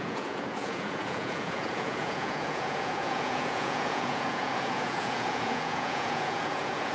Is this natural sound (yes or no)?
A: no